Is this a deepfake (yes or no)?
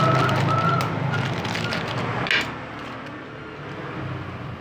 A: no